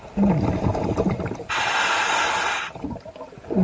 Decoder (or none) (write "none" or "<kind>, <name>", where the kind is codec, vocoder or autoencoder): none